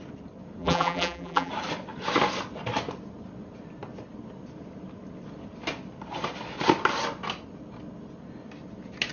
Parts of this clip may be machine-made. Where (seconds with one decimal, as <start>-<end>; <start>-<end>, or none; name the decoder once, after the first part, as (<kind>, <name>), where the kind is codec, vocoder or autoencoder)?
0.6-1.5 (vocoder, BigVGAN v2)